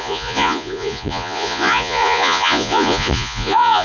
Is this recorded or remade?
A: remade